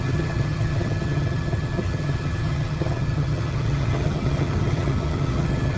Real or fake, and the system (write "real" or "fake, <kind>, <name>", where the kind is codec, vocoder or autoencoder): fake, vocoder, HiFi-GAN